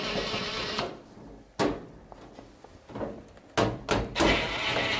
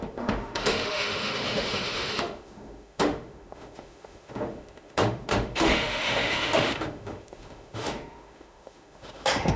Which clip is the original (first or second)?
first